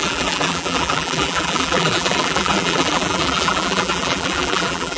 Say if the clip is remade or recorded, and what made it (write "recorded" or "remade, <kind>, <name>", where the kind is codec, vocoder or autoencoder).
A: remade, vocoder, BigVGAN v2